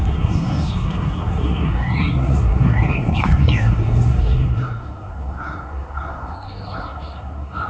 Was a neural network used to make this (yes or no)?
yes